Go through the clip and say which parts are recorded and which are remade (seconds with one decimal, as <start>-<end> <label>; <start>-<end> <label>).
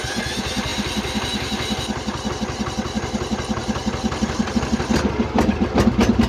0.0-6.3 recorded